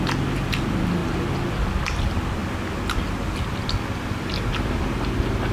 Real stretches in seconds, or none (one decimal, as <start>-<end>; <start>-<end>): 0.0-5.5